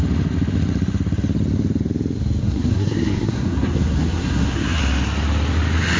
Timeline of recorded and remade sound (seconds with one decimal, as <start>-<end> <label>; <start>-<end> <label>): 0.0-2.4 recorded; 2.4-4.8 remade; 4.8-6.0 recorded